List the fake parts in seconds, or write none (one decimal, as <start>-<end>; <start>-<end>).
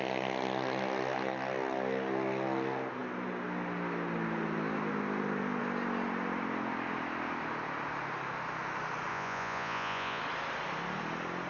9.1-10.2